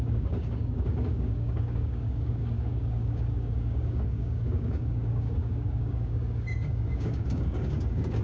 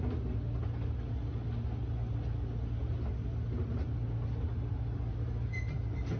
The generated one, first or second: first